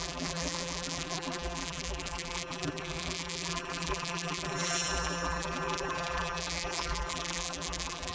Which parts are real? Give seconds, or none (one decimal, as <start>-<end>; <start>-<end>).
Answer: none